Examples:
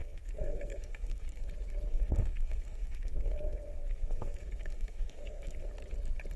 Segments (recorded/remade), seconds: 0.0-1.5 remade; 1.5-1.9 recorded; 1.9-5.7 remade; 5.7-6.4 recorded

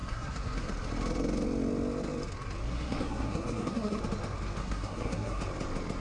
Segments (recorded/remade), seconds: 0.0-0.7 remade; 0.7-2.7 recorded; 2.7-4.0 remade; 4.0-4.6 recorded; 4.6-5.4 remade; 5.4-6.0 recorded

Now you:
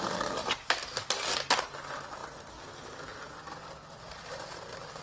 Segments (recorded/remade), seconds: 0.0-5.0 recorded